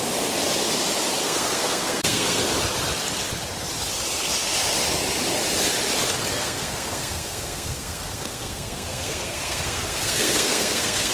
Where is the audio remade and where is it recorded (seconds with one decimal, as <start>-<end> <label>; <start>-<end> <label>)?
0.0-1.2 recorded; 1.2-2.4 remade; 2.4-6.3 recorded; 6.3-11.1 remade

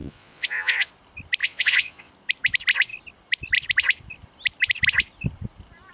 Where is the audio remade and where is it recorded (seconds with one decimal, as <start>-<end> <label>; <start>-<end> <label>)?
0.0-0.9 remade; 0.9-1.4 recorded; 1.4-2.1 remade; 2.1-5.9 recorded